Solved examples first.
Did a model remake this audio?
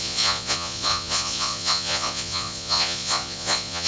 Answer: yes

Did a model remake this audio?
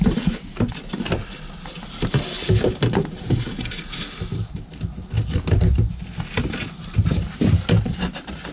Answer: no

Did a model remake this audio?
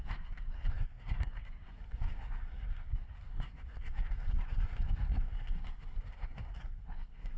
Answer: yes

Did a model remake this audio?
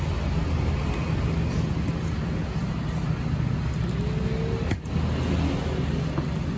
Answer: no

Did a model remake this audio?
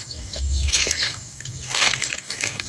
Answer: yes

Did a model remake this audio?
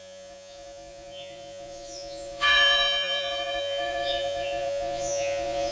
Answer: yes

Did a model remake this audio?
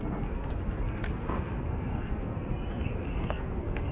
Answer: yes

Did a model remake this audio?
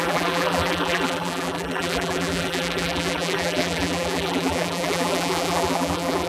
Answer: yes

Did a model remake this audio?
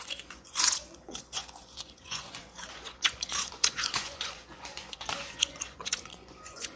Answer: yes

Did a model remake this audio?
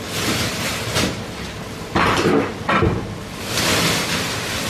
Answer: no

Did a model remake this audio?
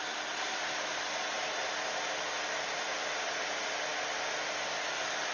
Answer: no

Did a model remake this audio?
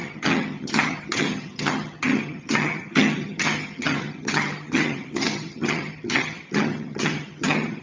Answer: yes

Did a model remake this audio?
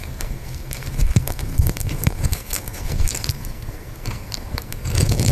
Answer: yes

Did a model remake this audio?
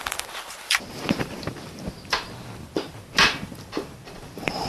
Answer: yes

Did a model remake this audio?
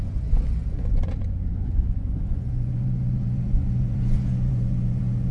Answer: yes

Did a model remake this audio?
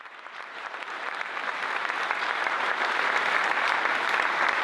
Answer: yes